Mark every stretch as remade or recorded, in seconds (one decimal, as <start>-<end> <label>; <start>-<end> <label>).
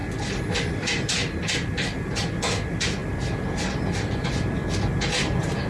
0.0-5.7 recorded